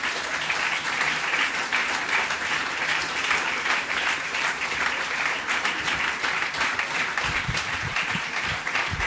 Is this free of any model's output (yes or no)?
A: no